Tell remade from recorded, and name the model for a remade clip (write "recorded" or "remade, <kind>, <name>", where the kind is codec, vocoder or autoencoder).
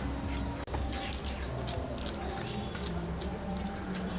recorded